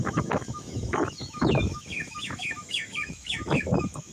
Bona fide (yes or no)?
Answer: no